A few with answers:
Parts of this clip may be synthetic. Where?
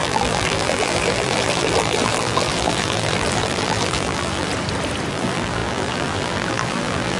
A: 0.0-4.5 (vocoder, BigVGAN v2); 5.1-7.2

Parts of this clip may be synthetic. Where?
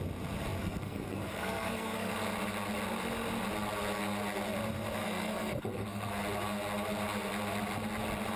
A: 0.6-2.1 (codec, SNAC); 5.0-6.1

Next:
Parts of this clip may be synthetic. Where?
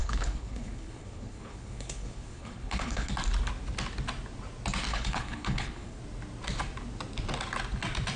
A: 0.0-3.1 (codec, HILCodec); 4.9-6.0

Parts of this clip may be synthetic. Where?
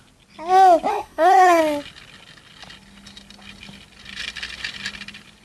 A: 0.9-1.6 (codec, SNAC)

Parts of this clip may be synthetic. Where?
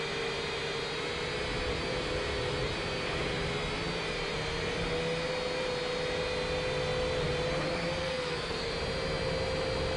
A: 8.0-8.7 (codec, SNAC)